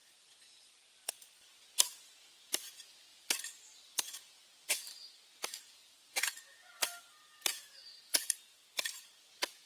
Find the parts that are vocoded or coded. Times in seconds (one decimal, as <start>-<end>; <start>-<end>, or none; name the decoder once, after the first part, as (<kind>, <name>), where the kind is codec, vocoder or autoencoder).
0.0-1.1 (vocoder, BigVGAN v2); 3.1-3.9; 5.8-6.4; 8.1-9.1